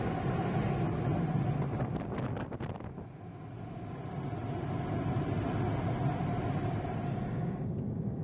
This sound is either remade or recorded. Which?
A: recorded